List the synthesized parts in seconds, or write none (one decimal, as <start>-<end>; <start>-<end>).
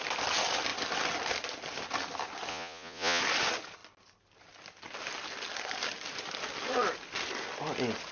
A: 2.5-3.2